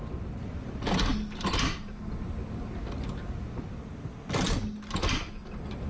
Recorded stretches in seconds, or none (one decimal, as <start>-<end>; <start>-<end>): 0.0-5.9